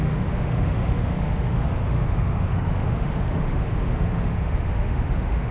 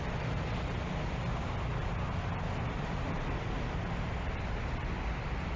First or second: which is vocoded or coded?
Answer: first